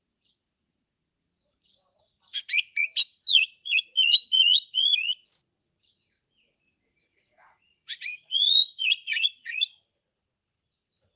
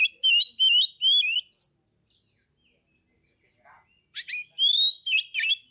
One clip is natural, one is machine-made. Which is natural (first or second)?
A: second